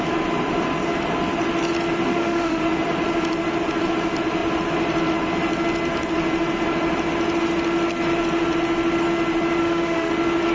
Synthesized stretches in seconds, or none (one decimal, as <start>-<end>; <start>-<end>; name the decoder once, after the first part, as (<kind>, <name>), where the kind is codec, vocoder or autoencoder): 2.1-2.6 (autoencoder, DAC-VAE); 9.6-10.1